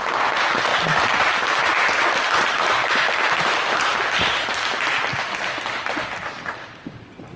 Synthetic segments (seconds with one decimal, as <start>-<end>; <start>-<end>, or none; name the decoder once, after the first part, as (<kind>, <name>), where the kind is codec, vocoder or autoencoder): none